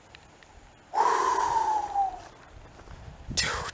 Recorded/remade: recorded